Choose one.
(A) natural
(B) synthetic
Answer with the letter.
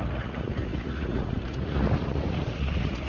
B